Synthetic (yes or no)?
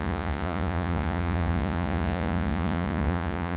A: yes